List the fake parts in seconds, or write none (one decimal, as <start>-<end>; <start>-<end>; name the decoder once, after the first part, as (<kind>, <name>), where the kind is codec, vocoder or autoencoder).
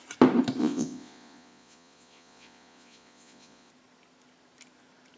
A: 0.6-3.7 (vocoder, Vocos)